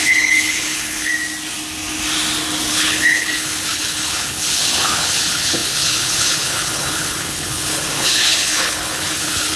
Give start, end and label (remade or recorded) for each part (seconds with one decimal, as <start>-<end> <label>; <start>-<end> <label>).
0.0-1.1 remade; 1.1-2.7 recorded; 2.7-9.6 remade